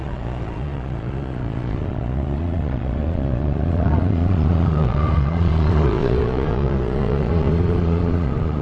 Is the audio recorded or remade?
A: remade